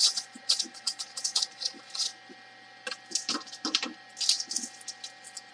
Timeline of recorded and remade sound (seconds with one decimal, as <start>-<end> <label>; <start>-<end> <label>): 0.0-2.1 remade; 2.1-5.5 recorded